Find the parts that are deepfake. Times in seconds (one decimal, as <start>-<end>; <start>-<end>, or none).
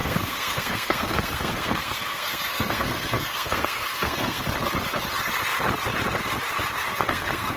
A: 0.0-4.4; 6.9-7.6